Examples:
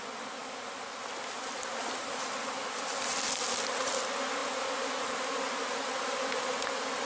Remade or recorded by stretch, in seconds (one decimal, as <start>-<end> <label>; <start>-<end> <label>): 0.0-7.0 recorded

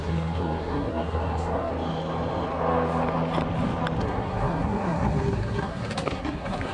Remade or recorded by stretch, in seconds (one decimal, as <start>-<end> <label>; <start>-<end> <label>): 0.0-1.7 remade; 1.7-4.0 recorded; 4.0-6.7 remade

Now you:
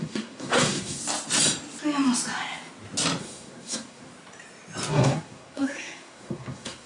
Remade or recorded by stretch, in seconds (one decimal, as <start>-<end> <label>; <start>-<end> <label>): 0.0-1.0 remade; 1.0-3.2 recorded; 3.2-4.1 remade; 4.1-4.9 recorded; 4.9-6.9 remade